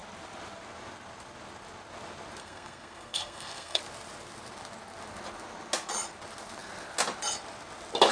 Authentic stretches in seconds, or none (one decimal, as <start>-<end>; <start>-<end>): 0.0-2.4; 3.8-8.1